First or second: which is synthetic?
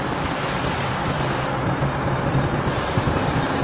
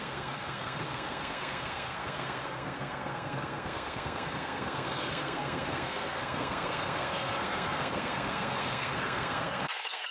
second